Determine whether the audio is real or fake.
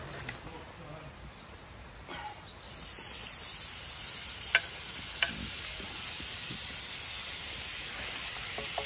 real